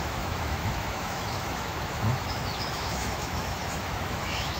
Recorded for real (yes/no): no